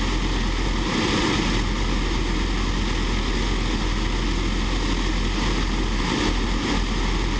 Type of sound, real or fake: real